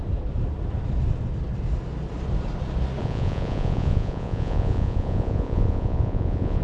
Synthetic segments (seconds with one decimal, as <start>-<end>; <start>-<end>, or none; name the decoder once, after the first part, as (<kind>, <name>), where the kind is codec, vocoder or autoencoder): 3.0-6.6 (vocoder, Vocos)